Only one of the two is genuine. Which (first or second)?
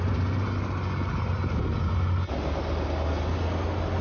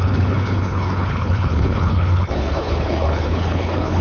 first